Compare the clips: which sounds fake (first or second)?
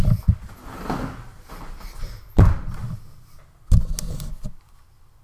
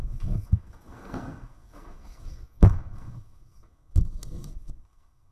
second